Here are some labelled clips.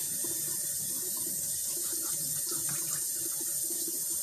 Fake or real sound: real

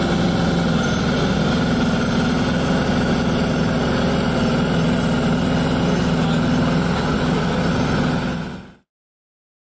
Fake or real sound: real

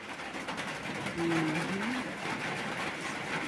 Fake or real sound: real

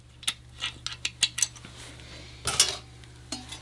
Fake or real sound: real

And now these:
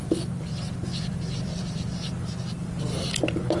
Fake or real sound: fake